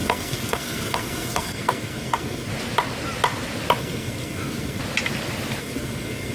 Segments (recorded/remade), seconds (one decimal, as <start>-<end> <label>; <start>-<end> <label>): 0.0-2.5 remade; 2.5-3.8 recorded; 3.8-4.8 remade; 4.8-5.6 recorded; 5.6-6.3 remade